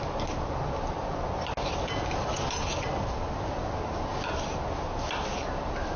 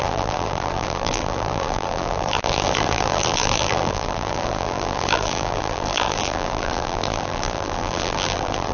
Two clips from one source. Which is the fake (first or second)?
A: second